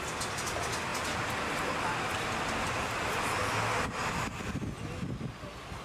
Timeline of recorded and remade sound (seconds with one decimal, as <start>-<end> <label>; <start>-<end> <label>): 0.0-5.8 recorded

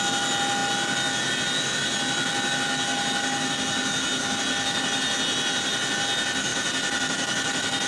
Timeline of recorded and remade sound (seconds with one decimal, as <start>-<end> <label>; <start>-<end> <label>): 0.0-6.5 recorded; 6.5-7.9 remade

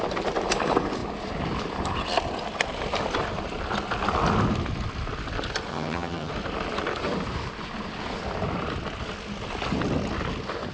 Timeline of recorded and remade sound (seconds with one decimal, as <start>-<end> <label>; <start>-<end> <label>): 0.0-5.7 recorded; 5.7-6.3 remade; 6.3-10.7 recorded

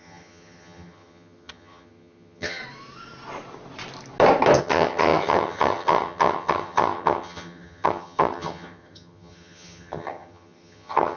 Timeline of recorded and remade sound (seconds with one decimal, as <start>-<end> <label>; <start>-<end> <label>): 0.0-2.6 remade; 2.6-4.6 recorded; 4.6-11.2 remade

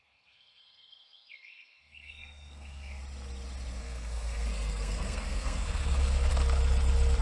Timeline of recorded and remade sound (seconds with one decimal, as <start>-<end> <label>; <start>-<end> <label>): 0.0-3.0 remade; 3.0-3.8 recorded; 3.8-6.3 remade; 6.3-7.2 recorded

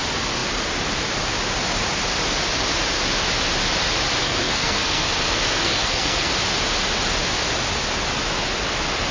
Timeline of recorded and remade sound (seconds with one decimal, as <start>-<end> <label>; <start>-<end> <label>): 0.0-4.2 recorded; 4.2-6.3 remade; 6.3-9.1 recorded

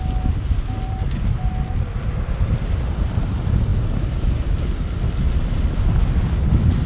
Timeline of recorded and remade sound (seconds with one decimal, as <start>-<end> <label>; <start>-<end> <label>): 0.0-6.9 recorded

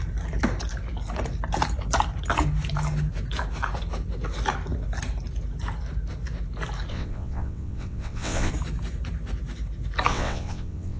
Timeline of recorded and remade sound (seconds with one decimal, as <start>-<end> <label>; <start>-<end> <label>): 0.0-6.9 recorded; 6.9-8.5 remade; 8.5-10.1 recorded; 10.1-11.0 remade